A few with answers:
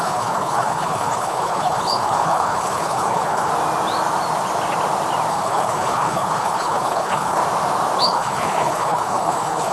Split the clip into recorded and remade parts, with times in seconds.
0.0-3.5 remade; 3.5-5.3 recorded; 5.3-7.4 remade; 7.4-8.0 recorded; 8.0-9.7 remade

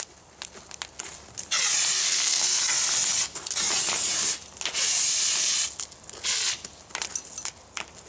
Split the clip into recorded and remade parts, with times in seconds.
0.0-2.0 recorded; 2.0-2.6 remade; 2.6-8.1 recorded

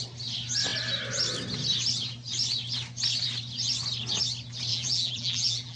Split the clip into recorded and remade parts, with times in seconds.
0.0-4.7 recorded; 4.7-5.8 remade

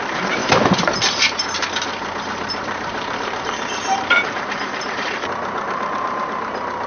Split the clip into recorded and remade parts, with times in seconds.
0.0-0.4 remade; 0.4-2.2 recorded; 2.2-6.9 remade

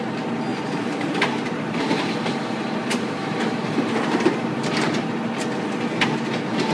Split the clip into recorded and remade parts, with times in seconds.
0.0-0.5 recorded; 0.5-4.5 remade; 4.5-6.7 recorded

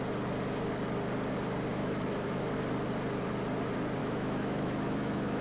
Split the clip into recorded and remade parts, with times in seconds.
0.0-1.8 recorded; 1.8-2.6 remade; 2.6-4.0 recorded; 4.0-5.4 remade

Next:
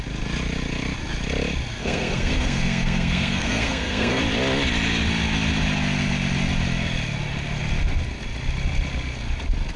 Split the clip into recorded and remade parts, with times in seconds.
0.0-1.8 recorded; 1.8-4.2 remade; 4.2-9.8 recorded

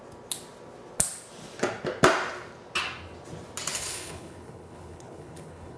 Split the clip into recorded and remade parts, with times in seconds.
0.0-3.7 recorded; 3.7-5.8 remade